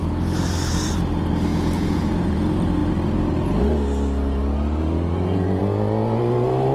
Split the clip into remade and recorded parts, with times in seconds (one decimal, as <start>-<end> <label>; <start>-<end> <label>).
0.0-1.5 recorded; 1.5-2.1 remade; 2.1-6.7 recorded